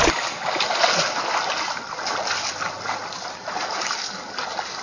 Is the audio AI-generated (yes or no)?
no